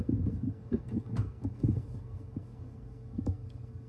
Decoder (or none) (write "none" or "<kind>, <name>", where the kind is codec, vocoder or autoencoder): codec, SNAC